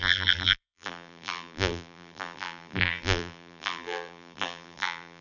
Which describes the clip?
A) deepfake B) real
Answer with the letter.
A